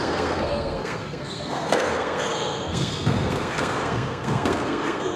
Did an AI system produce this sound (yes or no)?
yes